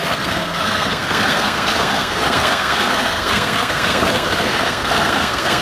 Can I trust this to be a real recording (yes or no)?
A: no